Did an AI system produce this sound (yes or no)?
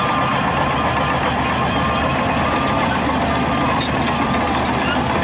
no